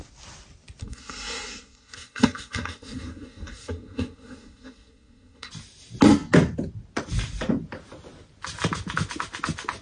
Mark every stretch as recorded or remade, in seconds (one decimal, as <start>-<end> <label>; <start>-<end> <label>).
0.0-0.8 recorded; 0.8-5.5 remade; 5.5-9.8 recorded